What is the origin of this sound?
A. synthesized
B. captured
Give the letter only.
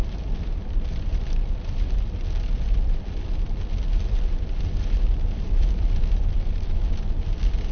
A